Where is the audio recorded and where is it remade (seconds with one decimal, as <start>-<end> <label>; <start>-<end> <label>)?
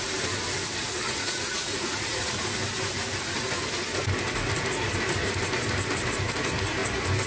0.0-0.8 recorded; 0.8-2.3 remade; 2.3-7.3 recorded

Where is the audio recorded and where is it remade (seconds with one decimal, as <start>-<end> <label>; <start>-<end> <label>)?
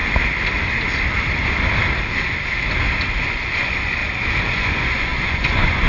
0.0-3.2 recorded; 3.2-4.0 remade; 4.0-4.5 recorded; 4.5-5.9 remade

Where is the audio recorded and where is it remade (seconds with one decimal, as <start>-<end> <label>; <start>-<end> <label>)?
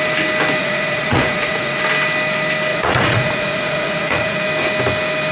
0.0-0.6 recorded; 0.6-1.8 remade; 1.8-2.7 recorded; 2.7-4.4 remade; 4.4-5.3 recorded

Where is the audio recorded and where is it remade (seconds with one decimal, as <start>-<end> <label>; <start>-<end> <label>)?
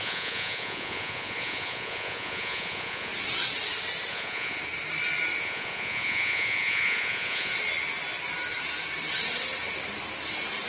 0.0-3.1 remade; 3.1-4.1 recorded; 4.1-4.6 remade; 4.6-5.4 recorded; 5.4-7.5 remade; 7.5-10.7 recorded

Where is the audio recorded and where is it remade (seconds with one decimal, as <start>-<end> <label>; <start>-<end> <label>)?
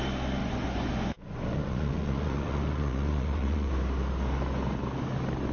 0.0-0.4 recorded; 0.4-3.7 remade; 3.7-5.5 recorded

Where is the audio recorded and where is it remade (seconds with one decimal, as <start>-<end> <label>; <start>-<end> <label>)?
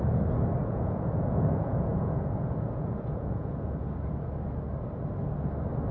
0.0-0.6 recorded; 0.6-4.1 remade; 4.1-5.9 recorded